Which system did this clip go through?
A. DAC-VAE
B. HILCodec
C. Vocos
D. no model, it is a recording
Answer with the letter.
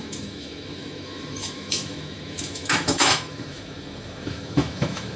A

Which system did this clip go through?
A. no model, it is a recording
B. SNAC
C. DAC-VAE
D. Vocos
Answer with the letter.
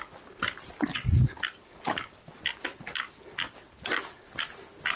A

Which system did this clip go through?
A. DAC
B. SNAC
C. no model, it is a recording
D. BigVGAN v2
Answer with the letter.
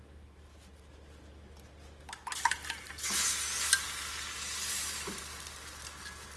C